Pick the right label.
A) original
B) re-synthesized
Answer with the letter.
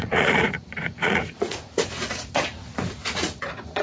B